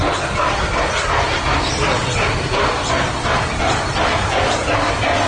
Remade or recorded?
recorded